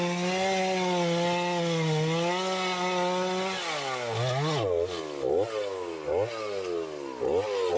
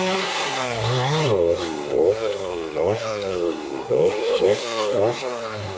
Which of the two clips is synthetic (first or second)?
second